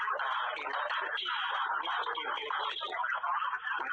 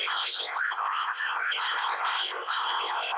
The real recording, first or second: first